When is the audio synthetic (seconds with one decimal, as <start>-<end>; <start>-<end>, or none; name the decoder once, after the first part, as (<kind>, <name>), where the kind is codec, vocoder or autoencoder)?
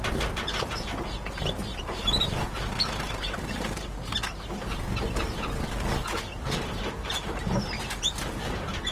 0.0-0.5 (vocoder, BigVGAN v2); 1.8-4.1; 6.2-8.9